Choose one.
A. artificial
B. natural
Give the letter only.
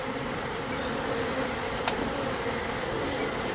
B